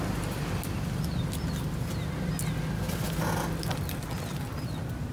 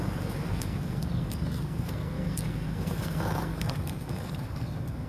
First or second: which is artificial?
second